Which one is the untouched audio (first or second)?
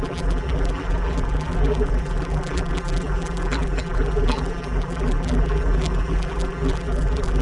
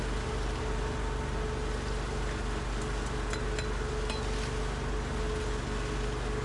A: second